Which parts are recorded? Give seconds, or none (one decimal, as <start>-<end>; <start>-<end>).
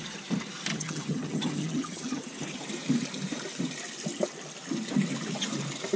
0.0-0.7; 2.2-6.0